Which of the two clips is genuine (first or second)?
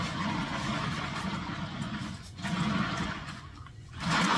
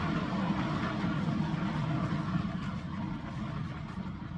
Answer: second